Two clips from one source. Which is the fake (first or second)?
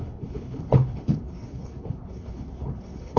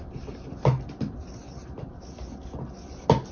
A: first